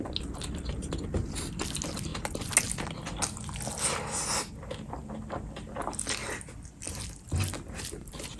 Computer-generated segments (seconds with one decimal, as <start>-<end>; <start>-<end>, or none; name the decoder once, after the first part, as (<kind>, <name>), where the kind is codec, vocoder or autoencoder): none